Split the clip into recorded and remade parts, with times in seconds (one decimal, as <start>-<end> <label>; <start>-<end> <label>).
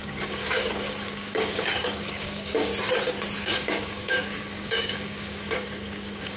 0.0-2.7 remade; 2.7-3.4 recorded; 3.4-6.4 remade